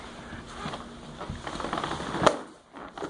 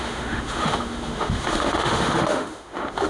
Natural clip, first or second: first